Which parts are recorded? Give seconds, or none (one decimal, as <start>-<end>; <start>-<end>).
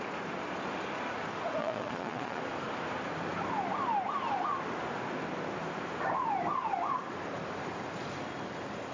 0.0-1.6; 2.4-8.9